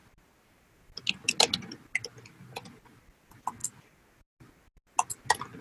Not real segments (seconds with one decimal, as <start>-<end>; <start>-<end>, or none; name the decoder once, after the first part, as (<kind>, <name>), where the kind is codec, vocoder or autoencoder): none